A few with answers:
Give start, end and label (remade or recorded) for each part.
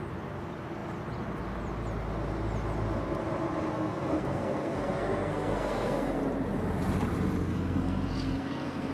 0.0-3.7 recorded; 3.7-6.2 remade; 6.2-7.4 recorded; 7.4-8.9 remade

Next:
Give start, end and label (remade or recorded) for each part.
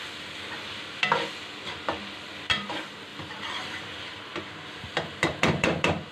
0.0-3.1 recorded; 3.1-6.1 remade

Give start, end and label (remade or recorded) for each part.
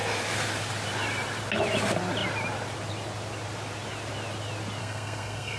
0.0-4.8 recorded; 4.8-5.6 remade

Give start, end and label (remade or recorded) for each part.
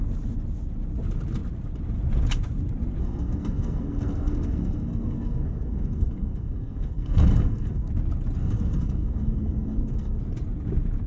0.0-3.0 recorded; 3.0-7.9 remade; 7.9-8.4 recorded; 8.4-10.2 remade; 10.2-11.1 recorded